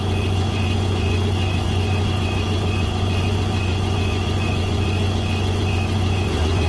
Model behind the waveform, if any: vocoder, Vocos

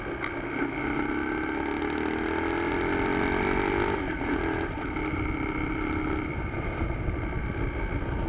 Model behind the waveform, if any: none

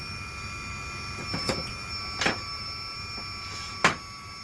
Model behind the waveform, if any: none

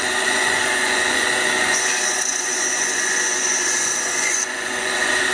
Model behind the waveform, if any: vocoder, Vocos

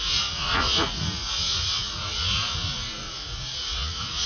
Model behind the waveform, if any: vocoder, Vocos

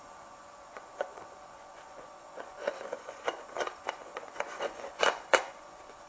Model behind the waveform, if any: vocoder, Vocos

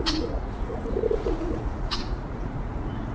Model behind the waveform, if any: vocoder, Vocos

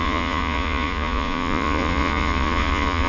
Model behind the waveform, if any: vocoder, Vocos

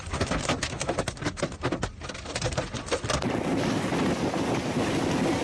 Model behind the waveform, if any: none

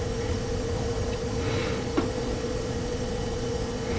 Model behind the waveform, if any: vocoder, Vocos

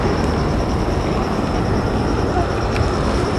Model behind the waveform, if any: none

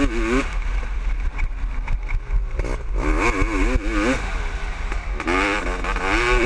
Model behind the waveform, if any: none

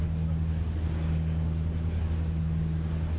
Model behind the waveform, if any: none